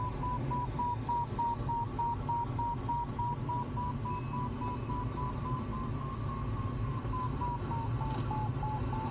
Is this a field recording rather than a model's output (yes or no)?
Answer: yes